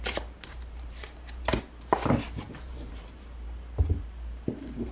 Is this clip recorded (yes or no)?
no